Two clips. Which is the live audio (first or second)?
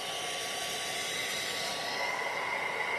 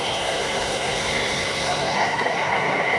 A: first